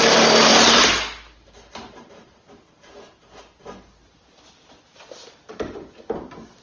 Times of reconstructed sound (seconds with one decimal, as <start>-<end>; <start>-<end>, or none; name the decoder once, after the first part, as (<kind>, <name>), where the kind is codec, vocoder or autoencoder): none